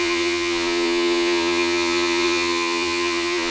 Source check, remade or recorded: remade